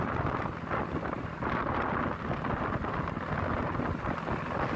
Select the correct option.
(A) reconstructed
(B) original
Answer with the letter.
B